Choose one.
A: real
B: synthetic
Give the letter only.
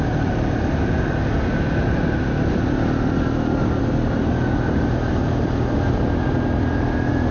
A